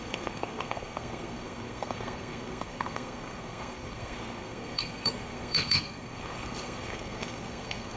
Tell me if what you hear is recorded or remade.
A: remade